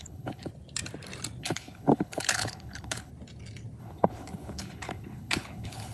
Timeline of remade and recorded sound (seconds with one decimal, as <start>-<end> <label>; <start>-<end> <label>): 0.0-0.5 remade; 0.5-1.4 recorded; 1.4-3.1 remade; 3.1-3.8 recorded; 3.8-5.9 remade